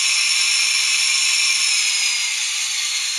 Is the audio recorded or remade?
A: recorded